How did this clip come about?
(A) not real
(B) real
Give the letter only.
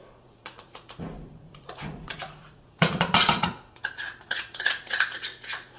A